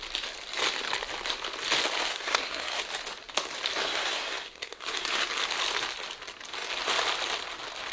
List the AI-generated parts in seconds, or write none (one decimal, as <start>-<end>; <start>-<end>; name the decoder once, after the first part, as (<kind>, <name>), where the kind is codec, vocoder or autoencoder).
2.1-2.8 (codec, SNAC); 3.8-5.3